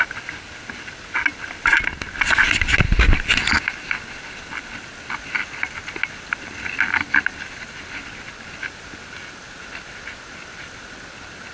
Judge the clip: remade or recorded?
recorded